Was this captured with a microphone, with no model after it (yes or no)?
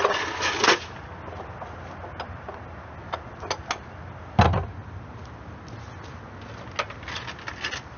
yes